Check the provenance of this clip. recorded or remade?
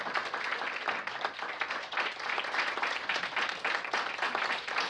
recorded